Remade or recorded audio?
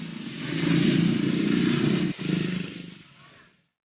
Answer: recorded